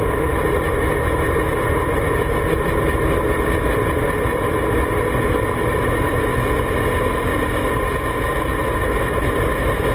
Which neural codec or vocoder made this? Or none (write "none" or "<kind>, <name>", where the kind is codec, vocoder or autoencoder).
none